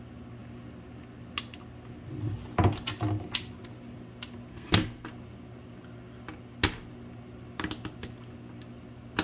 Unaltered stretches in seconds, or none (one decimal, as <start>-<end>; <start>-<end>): 0.0-4.5; 5.1-9.2